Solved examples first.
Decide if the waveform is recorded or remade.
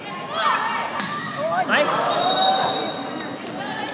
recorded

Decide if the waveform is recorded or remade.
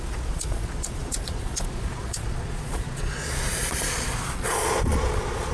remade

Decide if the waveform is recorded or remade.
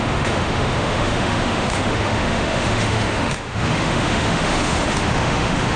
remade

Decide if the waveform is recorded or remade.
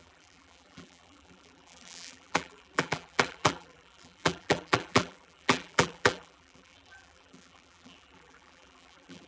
remade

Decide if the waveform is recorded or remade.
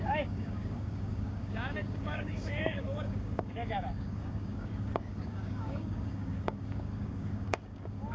remade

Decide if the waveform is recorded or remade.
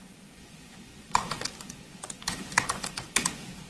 remade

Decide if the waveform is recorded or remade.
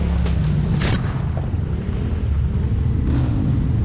recorded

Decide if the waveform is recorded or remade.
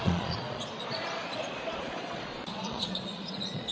remade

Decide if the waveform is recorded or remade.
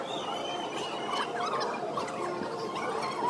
recorded